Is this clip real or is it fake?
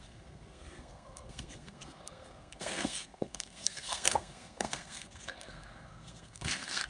fake